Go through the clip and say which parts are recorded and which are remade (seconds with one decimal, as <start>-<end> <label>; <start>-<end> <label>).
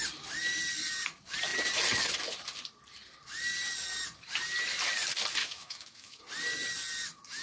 0.0-5.4 recorded; 5.4-6.2 remade; 6.2-7.4 recorded